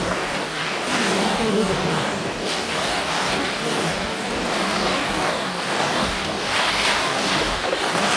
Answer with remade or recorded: remade